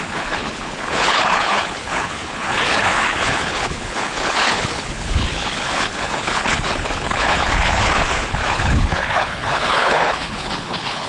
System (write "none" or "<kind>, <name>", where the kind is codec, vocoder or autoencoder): codec, HILCodec